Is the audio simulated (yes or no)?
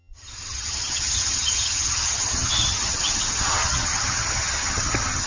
yes